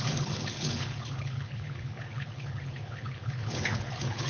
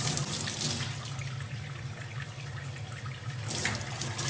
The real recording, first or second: second